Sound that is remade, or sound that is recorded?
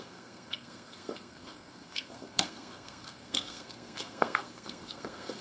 remade